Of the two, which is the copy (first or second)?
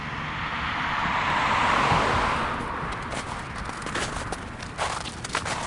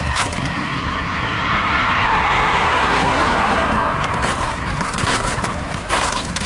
second